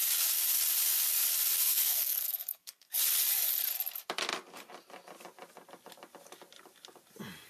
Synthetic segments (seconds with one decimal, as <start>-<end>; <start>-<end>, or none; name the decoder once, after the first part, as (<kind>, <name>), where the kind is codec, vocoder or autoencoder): 1.6-3.0 (codec, SNAC)